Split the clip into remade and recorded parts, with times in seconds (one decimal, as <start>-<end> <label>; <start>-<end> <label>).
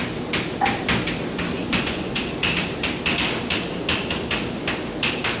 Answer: 0.0-1.6 recorded; 1.6-2.2 remade; 2.2-5.4 recorded